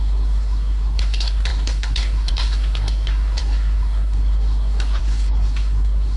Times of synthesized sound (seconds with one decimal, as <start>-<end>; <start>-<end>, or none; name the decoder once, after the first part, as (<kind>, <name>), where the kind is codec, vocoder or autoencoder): 0.0-6.2 (codec, SNAC)